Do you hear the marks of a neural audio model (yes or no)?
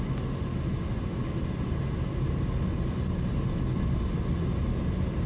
no